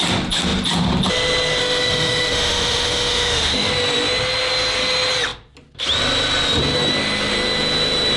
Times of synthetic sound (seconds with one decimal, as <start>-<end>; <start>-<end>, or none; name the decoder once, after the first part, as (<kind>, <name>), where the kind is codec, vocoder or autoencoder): 1.6-3.7 (autoencoder, DAC-VAE)